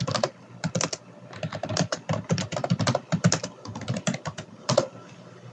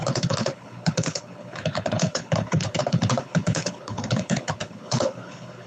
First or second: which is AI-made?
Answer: second